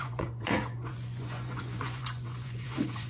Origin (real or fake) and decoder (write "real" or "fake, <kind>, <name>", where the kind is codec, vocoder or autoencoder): fake, vocoder, Vocos